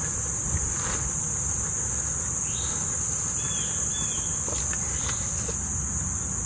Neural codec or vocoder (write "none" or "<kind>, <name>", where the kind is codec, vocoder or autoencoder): none